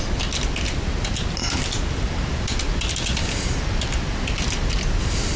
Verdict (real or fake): real